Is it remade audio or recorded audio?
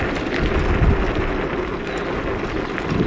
recorded